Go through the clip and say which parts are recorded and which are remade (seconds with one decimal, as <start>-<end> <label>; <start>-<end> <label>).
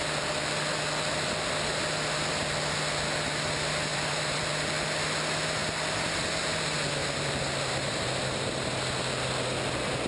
0.0-3.9 recorded; 3.9-4.5 remade; 4.5-7.0 recorded; 7.0-8.7 remade; 8.7-10.1 recorded